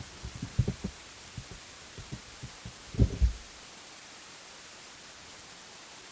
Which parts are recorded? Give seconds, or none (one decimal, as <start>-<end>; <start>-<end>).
0.0-6.1